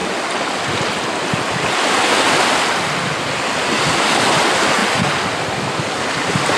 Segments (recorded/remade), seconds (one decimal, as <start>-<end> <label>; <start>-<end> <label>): 0.0-6.6 recorded